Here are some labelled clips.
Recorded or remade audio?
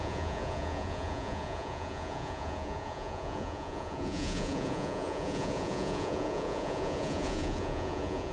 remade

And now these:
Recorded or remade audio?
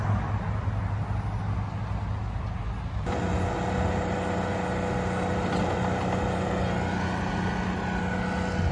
recorded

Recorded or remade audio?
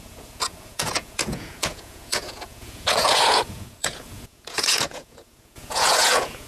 remade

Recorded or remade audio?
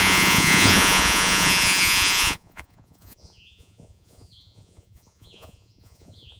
remade